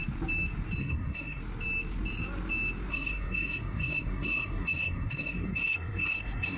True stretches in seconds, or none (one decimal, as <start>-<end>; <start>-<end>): 0.0-0.8; 1.4-2.9